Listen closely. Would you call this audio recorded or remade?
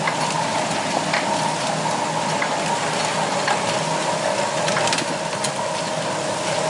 recorded